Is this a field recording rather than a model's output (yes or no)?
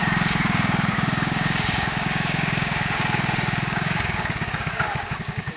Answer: no